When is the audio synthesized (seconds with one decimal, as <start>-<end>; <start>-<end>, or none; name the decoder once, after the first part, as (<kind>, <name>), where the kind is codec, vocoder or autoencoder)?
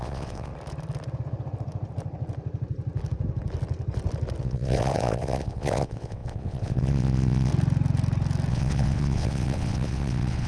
0.0-0.5 (vocoder, WaveNeXt); 4.4-7.5; 8.5-10.5